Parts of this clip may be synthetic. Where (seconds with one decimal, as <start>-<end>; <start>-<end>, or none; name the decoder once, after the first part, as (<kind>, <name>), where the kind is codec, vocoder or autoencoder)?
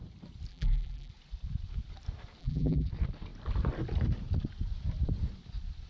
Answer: 0.5-1.1 (vocoder, BigVGAN v2); 2.4-2.9